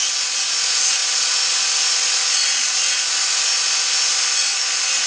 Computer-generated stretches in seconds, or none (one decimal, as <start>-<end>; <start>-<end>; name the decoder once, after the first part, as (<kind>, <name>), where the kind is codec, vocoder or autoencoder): none